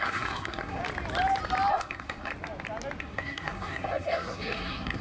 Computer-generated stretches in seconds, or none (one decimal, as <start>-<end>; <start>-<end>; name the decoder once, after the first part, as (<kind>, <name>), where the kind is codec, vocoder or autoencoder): 0.0-0.8 (codec, SNAC); 1.7-2.3; 3.0-5.0